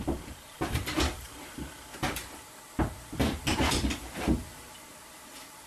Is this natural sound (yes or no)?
no